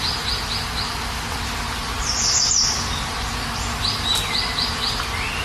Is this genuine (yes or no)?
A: yes